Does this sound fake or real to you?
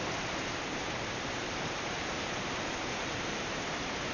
fake